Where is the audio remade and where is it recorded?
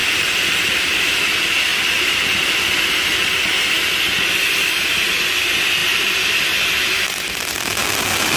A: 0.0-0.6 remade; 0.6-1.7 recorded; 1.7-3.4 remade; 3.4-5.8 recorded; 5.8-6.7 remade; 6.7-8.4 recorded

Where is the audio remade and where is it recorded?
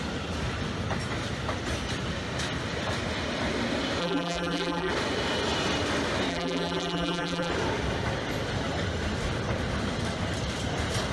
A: 0.0-4.0 recorded; 4.0-4.9 remade; 4.9-6.3 recorded; 6.3-7.5 remade; 7.5-11.1 recorded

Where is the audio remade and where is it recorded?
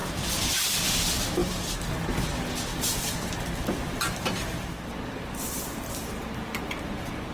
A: 0.0-1.4 recorded; 1.4-1.9 remade; 1.9-2.7 recorded; 2.7-5.4 remade; 5.4-7.3 recorded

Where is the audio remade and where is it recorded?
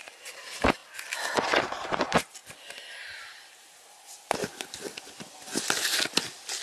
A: 0.0-0.8 remade; 0.8-1.6 recorded; 1.6-2.4 remade; 2.4-3.2 recorded; 3.2-4.8 remade; 4.8-6.6 recorded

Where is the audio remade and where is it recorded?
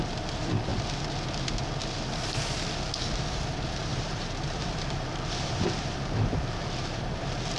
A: 0.0-0.7 remade; 0.7-3.3 recorded; 3.3-7.6 remade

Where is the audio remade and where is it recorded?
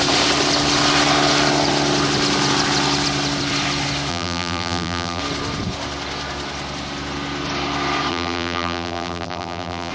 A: 0.0-4.1 recorded; 4.1-5.2 remade; 5.2-8.1 recorded; 8.1-9.9 remade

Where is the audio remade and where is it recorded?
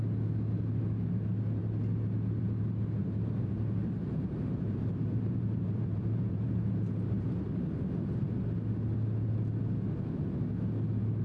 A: 0.0-3.0 recorded; 3.0-7.5 remade; 7.5-11.2 recorded